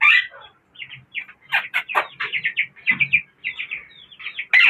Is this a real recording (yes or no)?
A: yes